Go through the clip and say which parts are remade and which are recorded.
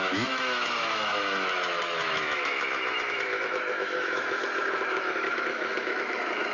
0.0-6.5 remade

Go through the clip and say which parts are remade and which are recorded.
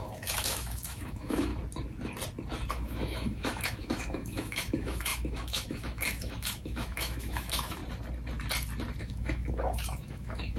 0.0-1.5 remade; 1.5-2.7 recorded; 2.7-7.8 remade; 7.8-9.0 recorded; 9.0-10.6 remade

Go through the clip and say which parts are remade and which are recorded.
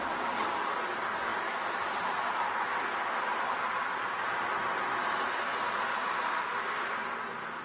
0.0-6.1 recorded; 6.1-6.6 remade; 6.6-7.6 recorded